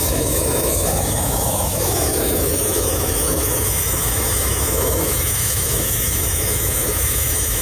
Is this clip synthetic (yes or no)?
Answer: yes